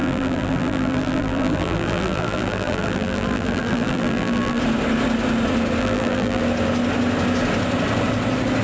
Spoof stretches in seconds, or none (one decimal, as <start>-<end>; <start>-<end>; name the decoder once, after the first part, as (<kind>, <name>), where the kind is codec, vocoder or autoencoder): 0.0-4.6 (vocoder, BigVGAN v2); 5.8-6.4